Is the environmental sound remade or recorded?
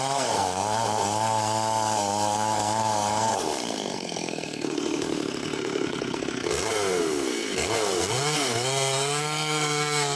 remade